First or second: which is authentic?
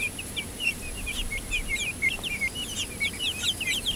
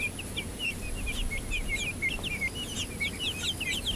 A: second